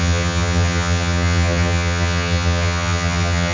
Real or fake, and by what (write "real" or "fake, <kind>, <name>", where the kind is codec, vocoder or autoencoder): fake, vocoder, HiFi-GAN